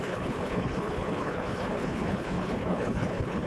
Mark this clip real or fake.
fake